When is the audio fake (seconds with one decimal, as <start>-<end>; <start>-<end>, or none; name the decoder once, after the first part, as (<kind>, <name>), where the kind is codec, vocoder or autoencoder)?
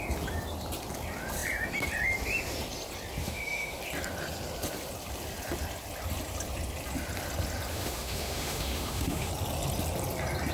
3.2-3.8 (autoencoder, DAC-VAE); 7.7-9.3